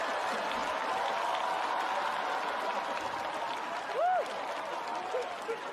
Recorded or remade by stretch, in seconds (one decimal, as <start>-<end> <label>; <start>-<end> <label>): 0.0-5.7 recorded